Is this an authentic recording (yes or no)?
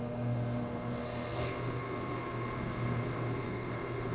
no